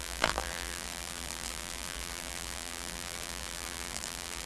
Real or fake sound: fake